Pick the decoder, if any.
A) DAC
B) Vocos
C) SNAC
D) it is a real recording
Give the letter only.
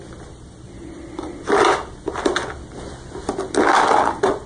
D